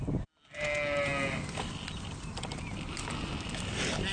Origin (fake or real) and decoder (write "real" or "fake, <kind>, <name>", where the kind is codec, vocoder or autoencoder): real